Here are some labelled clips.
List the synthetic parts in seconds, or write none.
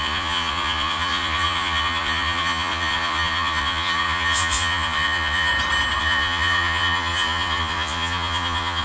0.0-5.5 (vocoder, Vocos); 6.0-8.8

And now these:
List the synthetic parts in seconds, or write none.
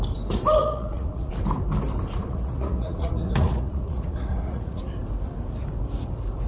0.6-1.3 (vocoder, Vocos); 2.2-4.8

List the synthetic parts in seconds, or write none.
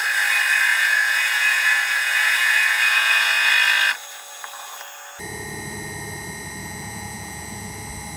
0.7-3.5 (vocoder, Vocos); 6.6-7.7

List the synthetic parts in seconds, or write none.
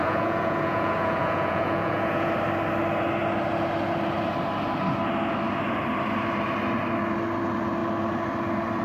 0.0-2.3 (vocoder, Vocos)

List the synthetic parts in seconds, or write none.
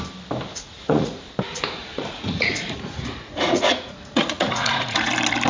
0.5-1.2 (vocoder, Vocos); 1.8-5.1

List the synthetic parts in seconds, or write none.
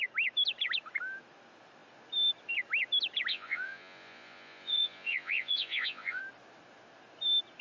3.3-6.2 (vocoder, Vocos)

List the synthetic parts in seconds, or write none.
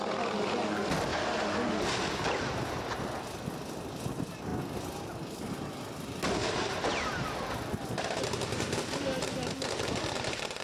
none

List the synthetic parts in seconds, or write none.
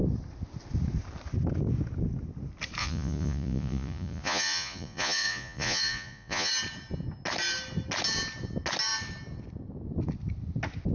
2.8-6.5 (vocoder, Vocos)